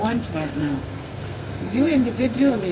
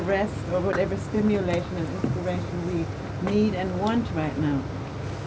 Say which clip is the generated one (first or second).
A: first